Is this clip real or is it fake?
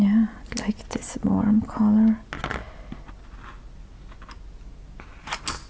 real